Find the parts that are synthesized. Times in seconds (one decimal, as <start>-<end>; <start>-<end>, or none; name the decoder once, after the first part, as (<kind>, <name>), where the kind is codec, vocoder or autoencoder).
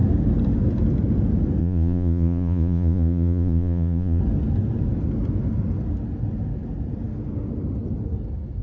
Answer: 1.6-4.2 (vocoder, Vocos)